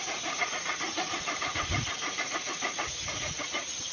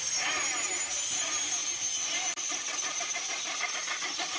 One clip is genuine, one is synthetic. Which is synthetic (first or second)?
first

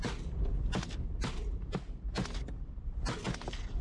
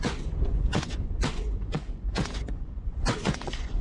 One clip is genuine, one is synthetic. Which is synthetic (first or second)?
second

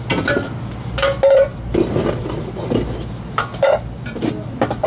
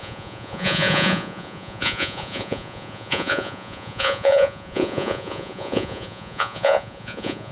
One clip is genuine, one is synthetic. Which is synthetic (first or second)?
second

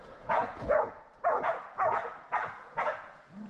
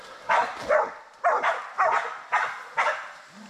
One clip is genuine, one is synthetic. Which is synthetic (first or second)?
first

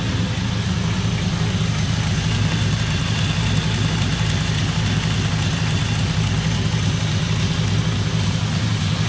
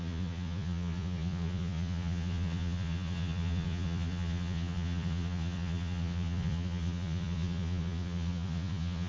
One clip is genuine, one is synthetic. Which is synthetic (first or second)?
second